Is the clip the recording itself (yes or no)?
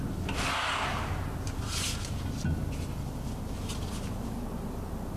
yes